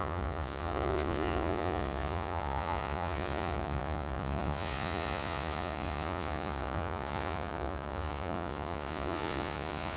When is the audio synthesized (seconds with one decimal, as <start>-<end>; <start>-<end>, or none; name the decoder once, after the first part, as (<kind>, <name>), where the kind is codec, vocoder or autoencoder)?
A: 0.0-10.0 (vocoder, Vocos)